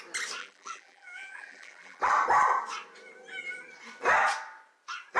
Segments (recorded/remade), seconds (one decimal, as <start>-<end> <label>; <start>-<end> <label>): 0.0-0.4 recorded; 0.4-2.1 remade; 2.1-5.2 recorded